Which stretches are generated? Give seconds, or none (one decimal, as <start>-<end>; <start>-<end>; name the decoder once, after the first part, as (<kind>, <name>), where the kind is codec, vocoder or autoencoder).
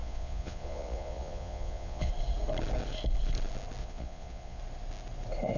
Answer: 0.0-2.1 (vocoder, Vocos); 3.8-4.6